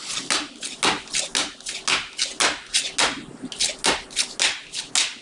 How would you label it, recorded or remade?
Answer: recorded